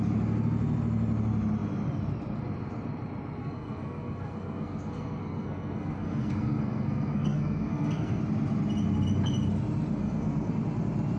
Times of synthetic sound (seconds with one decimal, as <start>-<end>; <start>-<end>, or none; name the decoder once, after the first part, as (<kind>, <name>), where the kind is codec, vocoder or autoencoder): 3.4-8.2 (codec, SNAC); 10.0-10.5